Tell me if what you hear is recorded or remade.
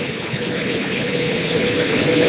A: remade